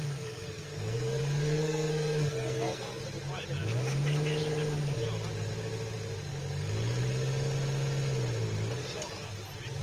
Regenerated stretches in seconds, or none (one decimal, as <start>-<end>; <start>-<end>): 0.0-3.0